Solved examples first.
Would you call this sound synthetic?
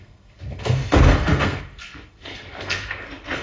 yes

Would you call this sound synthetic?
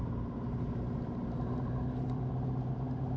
no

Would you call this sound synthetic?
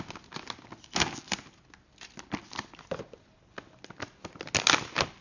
no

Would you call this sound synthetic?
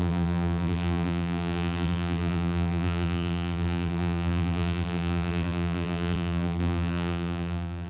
yes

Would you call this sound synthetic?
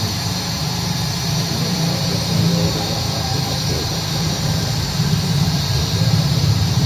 yes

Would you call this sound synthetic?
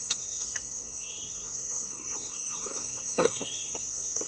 yes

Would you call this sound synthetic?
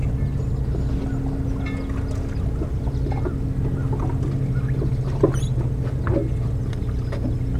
no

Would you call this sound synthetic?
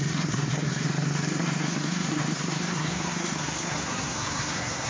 yes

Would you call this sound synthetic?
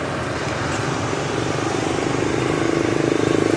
no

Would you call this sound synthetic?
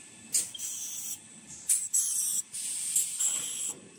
no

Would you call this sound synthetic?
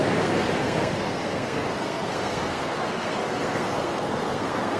yes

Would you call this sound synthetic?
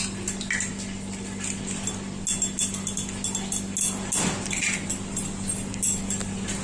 no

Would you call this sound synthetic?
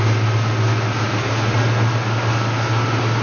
no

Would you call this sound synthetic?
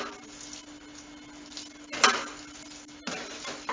no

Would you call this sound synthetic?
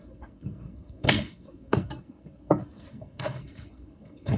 yes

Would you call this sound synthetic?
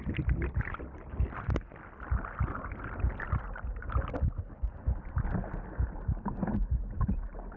no